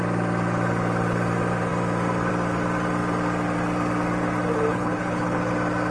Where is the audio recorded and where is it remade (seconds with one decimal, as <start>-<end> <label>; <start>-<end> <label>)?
0.0-4.7 recorded; 4.7-5.5 remade; 5.5-5.9 recorded